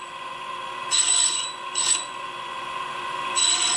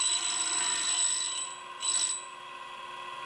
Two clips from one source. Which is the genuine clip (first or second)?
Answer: second